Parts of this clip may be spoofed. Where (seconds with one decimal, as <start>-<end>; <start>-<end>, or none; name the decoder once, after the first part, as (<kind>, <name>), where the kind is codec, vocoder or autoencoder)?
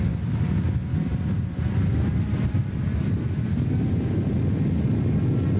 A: 0.9-3.4 (vocoder, BigVGAN v2)